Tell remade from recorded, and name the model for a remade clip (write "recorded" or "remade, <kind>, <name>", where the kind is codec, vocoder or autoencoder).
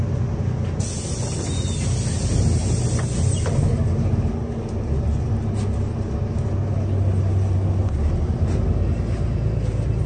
recorded